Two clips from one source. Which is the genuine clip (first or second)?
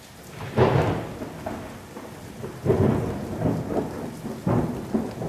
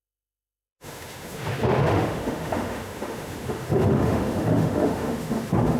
first